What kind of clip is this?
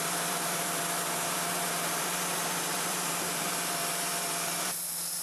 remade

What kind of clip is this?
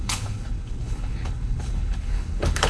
remade